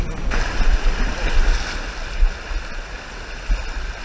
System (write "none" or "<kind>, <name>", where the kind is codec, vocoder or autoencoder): none